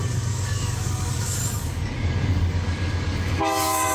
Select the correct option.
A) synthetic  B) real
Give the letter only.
A